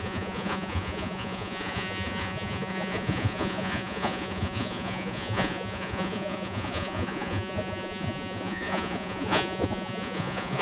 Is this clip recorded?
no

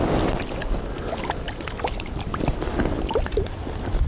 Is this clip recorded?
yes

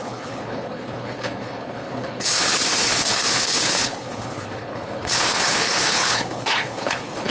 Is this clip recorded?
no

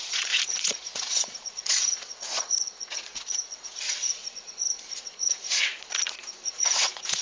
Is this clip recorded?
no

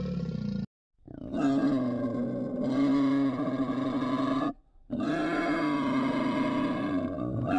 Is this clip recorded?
yes